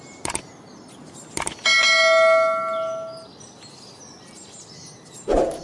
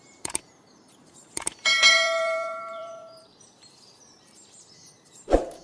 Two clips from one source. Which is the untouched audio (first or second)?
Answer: first